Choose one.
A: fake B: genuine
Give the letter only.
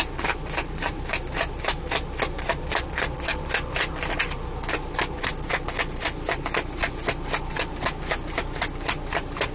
B